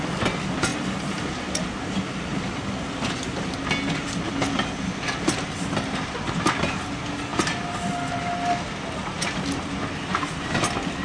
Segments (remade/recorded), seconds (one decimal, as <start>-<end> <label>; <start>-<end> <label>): 0.0-11.0 recorded